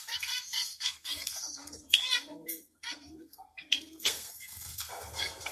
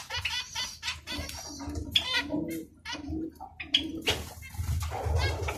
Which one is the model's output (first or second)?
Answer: first